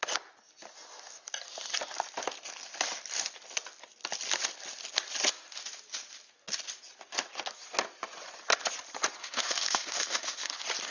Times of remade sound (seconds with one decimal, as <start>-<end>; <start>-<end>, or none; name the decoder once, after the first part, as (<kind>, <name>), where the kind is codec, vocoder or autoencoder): 9.2-10.5 (autoencoder, DAC-VAE)

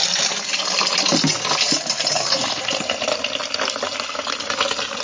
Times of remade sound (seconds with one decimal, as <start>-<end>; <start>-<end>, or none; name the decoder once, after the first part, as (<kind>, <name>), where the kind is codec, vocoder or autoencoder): none

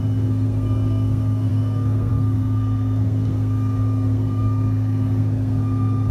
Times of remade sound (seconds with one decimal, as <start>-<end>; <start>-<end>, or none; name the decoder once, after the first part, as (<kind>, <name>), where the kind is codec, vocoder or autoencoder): 0.0-6.1 (codec, SNAC)

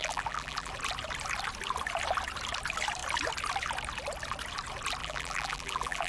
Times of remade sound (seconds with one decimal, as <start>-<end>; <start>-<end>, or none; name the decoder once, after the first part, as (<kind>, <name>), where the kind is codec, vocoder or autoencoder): 0.0-0.7 (vocoder, BigVGAN v2); 5.0-6.1